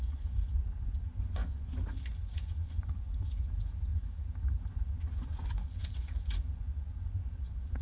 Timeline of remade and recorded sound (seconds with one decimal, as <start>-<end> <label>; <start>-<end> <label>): 0.0-3.9 remade; 3.9-4.7 recorded; 4.7-7.8 remade